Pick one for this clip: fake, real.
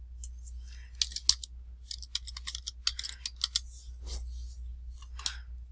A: real